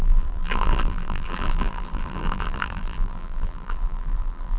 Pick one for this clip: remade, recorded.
remade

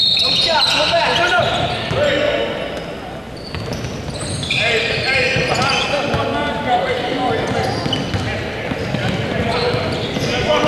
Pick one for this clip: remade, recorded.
recorded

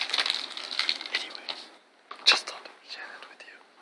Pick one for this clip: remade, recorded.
recorded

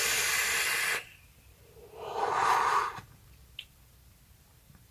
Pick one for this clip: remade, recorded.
remade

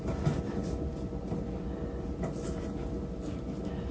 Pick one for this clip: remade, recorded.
recorded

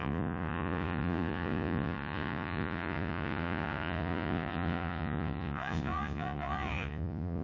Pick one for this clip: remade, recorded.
remade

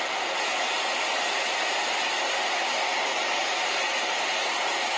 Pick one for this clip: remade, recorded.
recorded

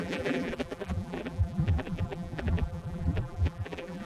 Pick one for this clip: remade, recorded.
remade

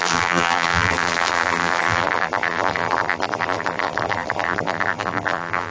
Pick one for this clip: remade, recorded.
remade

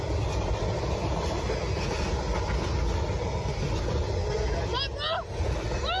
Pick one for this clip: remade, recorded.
recorded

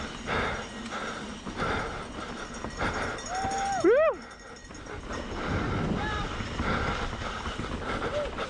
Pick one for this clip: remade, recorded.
recorded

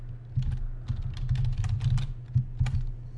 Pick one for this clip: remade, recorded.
recorded